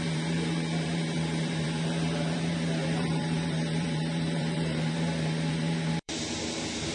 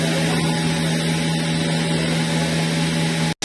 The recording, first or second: second